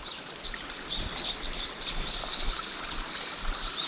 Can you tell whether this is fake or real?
real